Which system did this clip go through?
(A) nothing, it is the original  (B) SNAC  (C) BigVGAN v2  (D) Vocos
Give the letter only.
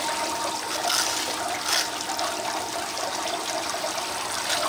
A